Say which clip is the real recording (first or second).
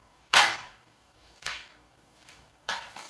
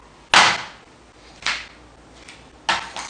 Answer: second